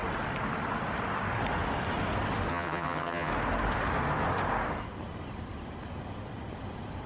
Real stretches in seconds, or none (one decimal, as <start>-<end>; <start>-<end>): 0.0-2.5; 3.3-7.1